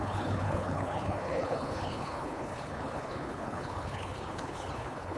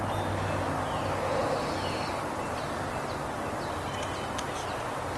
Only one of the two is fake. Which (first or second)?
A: first